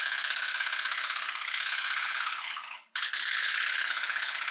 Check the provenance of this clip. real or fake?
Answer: fake